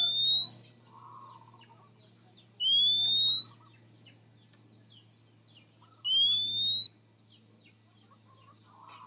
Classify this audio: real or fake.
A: real